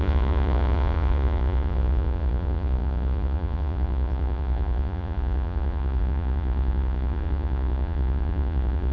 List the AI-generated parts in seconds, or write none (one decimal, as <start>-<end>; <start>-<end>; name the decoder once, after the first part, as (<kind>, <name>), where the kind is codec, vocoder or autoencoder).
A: 0.0-8.9 (vocoder, Vocos)